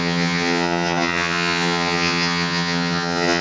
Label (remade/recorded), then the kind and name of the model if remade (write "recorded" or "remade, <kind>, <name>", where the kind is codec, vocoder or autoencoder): remade, vocoder, HiFi-GAN